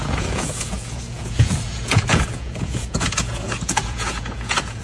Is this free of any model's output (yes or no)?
no